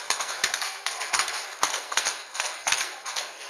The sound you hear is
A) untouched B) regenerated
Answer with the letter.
B